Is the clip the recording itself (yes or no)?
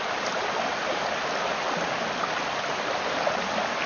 yes